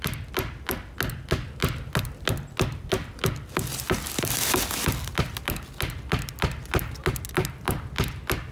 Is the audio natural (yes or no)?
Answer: yes